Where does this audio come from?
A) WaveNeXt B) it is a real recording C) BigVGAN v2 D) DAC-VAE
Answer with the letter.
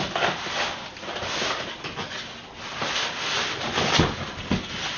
B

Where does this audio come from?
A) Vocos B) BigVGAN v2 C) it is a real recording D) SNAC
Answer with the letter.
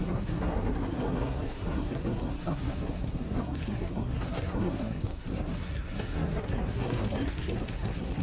D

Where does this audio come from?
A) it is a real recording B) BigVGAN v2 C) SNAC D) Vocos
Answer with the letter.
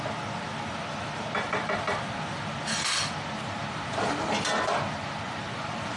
B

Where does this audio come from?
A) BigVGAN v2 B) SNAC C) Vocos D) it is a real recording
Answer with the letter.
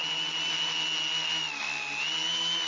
D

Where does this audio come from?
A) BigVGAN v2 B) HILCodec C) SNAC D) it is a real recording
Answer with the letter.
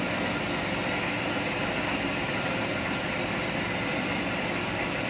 A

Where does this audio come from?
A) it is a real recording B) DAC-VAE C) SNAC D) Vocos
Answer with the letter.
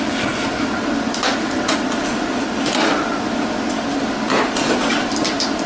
A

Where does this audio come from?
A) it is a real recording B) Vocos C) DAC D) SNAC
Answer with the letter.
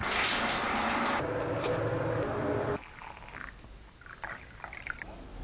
A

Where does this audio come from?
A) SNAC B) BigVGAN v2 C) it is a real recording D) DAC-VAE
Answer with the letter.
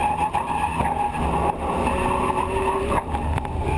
C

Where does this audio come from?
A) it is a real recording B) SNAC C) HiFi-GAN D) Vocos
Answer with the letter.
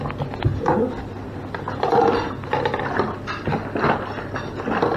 A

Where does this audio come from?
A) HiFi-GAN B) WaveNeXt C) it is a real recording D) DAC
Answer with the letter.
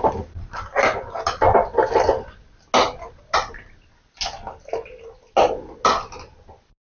C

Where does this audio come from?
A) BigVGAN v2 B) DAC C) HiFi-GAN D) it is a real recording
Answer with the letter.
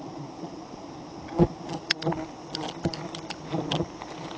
D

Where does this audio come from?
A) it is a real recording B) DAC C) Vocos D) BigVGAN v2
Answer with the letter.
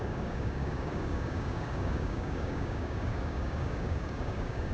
B